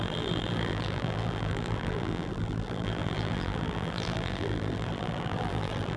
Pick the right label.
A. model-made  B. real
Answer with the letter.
A